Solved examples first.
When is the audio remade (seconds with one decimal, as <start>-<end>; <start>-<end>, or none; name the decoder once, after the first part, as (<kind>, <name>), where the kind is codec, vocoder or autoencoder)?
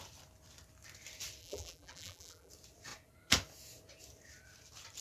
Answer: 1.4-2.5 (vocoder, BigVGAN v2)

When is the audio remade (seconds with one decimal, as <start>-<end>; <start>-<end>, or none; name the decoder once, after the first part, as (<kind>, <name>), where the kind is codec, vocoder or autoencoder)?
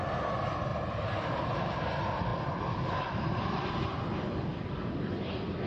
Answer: 0.7-1.8 (vocoder, BigVGAN v2)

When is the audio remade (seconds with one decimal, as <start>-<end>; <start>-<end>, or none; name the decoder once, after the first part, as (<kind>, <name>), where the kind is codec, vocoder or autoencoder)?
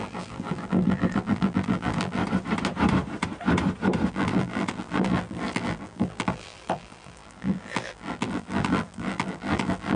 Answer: 0.0-2.2 (vocoder, BigVGAN v2); 4.1-10.0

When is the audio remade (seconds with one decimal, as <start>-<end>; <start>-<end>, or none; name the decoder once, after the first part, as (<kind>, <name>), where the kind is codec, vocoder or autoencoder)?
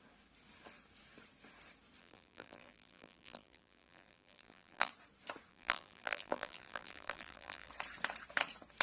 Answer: 2.0-4.9 (vocoder, BigVGAN v2); 5.5-7.7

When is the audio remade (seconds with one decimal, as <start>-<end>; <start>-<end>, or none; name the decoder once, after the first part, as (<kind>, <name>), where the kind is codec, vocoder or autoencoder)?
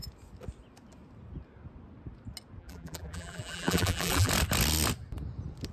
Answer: 2.6-4.3 (vocoder, BigVGAN v2)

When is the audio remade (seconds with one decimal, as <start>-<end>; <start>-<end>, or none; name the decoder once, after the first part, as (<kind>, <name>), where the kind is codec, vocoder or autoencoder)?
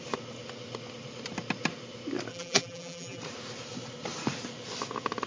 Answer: 2.3-3.2 (vocoder, BigVGAN v2)